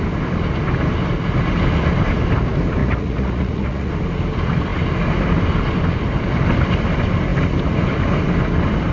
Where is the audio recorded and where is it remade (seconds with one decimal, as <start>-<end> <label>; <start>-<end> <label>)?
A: 0.0-2.8 recorded; 2.8-3.9 remade; 3.9-8.9 recorded